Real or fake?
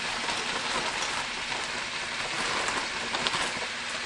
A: real